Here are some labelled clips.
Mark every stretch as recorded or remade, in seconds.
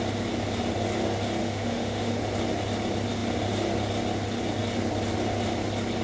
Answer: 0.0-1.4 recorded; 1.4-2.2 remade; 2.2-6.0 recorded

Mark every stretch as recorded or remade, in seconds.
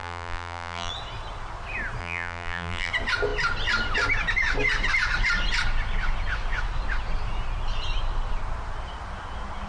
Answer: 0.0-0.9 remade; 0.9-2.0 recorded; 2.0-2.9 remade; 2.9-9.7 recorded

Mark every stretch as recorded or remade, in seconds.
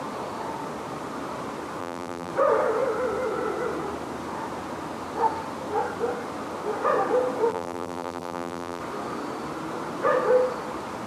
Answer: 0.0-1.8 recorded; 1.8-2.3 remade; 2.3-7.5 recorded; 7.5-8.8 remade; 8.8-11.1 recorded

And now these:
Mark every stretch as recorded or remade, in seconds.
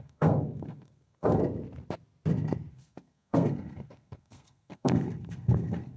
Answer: 0.0-1.4 remade; 1.4-2.7 recorded; 2.7-6.0 remade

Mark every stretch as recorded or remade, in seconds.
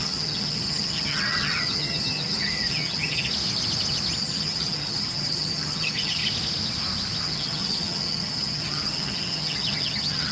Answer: 0.0-3.3 remade; 3.3-4.2 recorded; 4.2-6.2 remade; 6.2-7.2 recorded; 7.2-10.3 remade